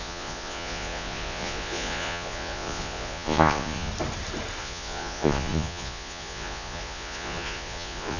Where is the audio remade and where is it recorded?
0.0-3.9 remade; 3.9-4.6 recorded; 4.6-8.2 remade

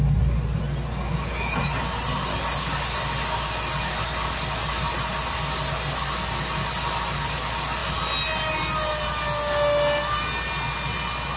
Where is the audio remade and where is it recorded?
0.0-11.4 recorded

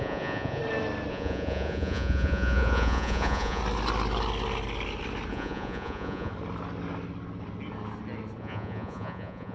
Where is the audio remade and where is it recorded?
0.0-0.6 remade; 0.6-1.1 recorded; 1.1-3.6 remade; 3.6-5.3 recorded; 5.3-6.3 remade; 6.3-8.4 recorded; 8.4-9.5 remade

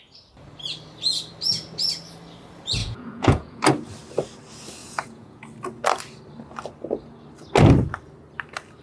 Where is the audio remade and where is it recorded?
0.0-2.8 recorded; 2.8-3.6 remade; 3.6-4.8 recorded; 4.8-5.4 remade; 5.4-8.8 recorded

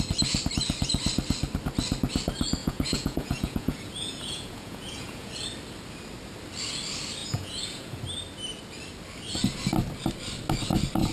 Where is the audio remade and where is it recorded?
0.0-2.6 recorded; 2.6-5.3 remade; 5.3-7.2 recorded; 7.2-8.0 remade; 8.0-11.1 recorded

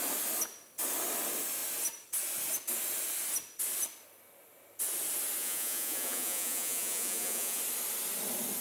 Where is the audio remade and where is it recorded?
0.0-5.4 recorded; 5.4-7.6 remade; 7.6-8.6 recorded

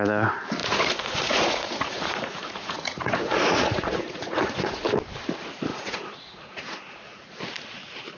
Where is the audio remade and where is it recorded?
0.0-0.6 recorded; 0.6-4.8 remade; 4.8-5.7 recorded; 5.7-7.3 remade; 7.3-8.2 recorded